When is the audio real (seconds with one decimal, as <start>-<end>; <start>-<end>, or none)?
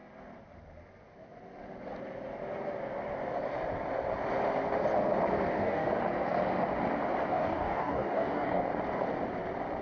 0.0-5.5; 6.0-7.3; 8.7-9.8